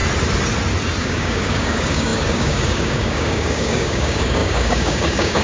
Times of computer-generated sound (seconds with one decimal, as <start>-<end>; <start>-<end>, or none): 1.0-5.4